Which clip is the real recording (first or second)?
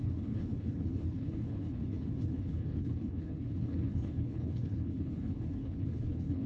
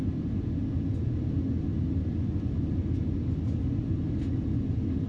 second